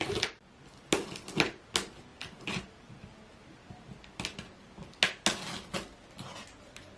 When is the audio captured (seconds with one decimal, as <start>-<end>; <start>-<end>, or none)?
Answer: 0.0-7.0